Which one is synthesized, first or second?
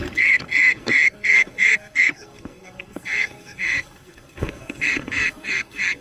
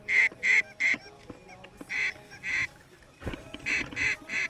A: first